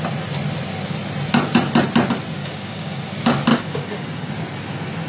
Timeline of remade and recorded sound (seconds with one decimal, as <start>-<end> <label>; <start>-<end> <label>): 0.0-2.4 recorded; 2.4-3.0 remade; 3.0-3.5 recorded; 3.5-4.3 remade; 4.3-5.1 recorded